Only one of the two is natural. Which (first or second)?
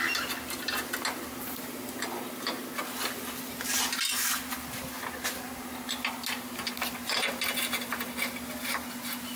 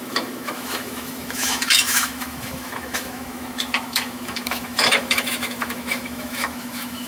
first